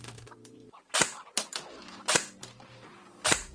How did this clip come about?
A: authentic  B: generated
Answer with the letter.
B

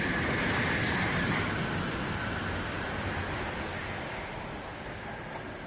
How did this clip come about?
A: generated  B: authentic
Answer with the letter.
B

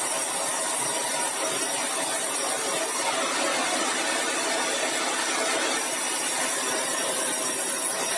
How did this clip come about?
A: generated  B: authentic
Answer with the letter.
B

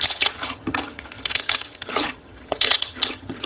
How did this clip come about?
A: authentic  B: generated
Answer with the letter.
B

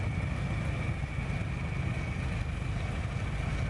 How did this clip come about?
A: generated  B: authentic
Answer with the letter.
B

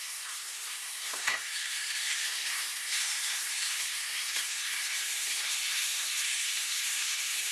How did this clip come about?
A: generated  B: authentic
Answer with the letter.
A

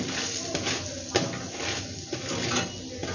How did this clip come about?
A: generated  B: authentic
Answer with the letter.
B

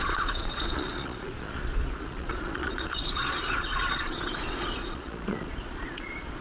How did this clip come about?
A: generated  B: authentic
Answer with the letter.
A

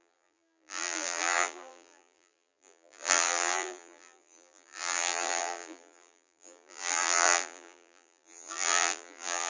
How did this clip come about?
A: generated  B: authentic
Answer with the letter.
A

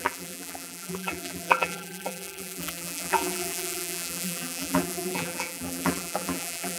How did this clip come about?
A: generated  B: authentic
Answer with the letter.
A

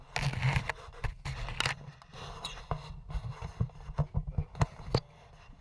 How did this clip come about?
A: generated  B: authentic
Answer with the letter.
B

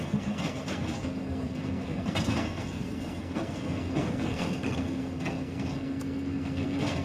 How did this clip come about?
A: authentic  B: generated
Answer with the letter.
B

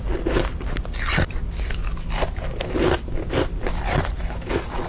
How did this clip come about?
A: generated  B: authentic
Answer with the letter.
B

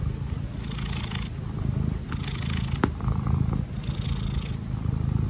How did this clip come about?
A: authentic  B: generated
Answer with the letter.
A